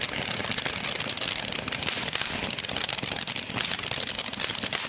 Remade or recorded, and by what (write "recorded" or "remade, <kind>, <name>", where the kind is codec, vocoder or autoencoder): recorded